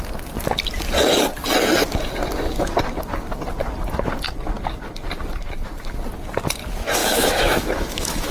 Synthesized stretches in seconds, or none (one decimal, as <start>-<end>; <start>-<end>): 7.0-8.3